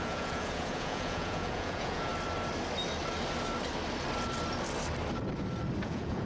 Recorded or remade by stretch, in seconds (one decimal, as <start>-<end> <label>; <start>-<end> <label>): 0.0-2.1 remade; 2.1-5.8 recorded; 5.8-6.2 remade

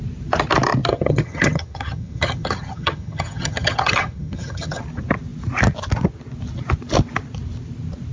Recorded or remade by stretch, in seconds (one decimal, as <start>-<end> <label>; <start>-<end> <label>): 0.0-0.9 recorded; 0.9-4.8 remade; 4.8-8.1 recorded

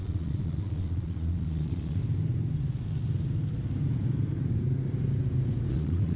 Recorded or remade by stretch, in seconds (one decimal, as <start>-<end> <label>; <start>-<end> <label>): 0.0-2.0 remade; 2.0-5.7 recorded; 5.7-6.2 remade

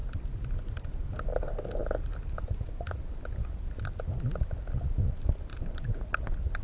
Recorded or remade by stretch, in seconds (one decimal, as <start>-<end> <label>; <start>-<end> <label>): 0.0-1.8 recorded; 1.8-3.2 remade; 3.2-5.5 recorded; 5.5-6.0 remade; 6.0-6.6 recorded

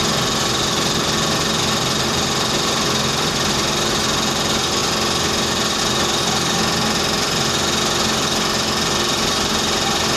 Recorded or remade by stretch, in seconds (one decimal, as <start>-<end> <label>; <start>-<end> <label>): 0.0-10.2 recorded

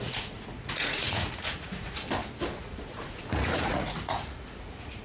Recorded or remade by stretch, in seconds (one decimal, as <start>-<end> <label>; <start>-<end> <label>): 0.0-2.0 remade; 2.0-2.6 recorded; 2.6-5.0 remade

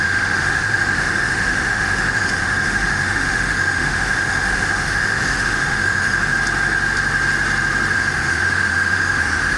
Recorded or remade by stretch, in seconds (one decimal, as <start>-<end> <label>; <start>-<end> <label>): 0.0-6.3 remade; 6.3-7.9 recorded; 7.9-9.6 remade

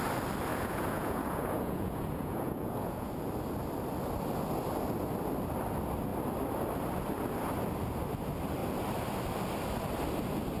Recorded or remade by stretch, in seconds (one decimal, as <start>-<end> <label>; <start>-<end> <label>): 0.0-0.5 recorded; 0.5-3.1 remade; 3.1-10.6 recorded